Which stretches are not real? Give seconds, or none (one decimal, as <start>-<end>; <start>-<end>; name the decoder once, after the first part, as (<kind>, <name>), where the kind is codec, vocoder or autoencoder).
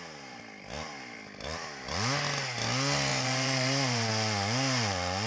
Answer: 3.1-4.1 (vocoder, BigVGAN v2)